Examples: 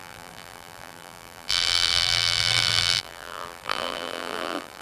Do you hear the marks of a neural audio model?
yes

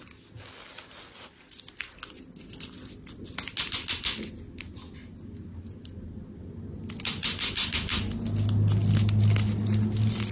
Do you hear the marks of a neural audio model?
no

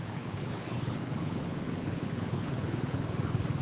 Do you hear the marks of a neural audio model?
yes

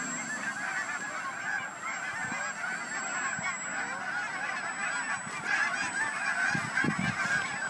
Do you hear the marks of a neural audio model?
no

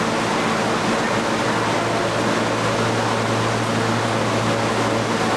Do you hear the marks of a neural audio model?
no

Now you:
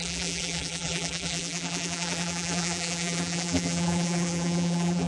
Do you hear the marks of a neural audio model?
yes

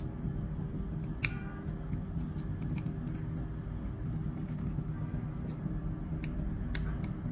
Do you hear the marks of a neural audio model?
no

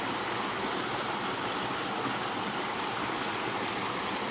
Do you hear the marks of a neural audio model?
no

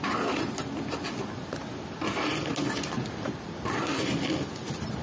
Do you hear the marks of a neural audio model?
no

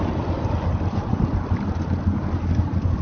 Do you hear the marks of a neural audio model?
no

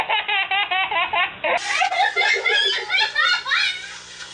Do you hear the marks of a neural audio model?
no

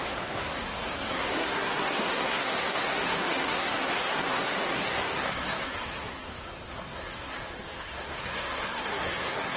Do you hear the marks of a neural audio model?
yes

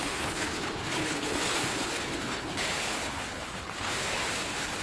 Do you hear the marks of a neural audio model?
yes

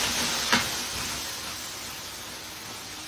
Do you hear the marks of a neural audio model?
no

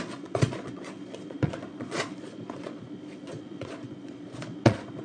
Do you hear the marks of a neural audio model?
yes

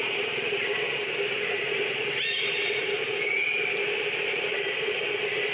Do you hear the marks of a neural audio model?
no